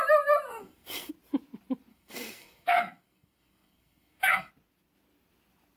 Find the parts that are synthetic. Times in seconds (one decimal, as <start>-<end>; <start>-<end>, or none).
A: 0.5-1.1; 1.9-4.5